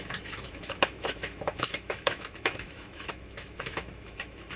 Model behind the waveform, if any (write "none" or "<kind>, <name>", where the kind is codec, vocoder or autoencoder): autoencoder, DAC-VAE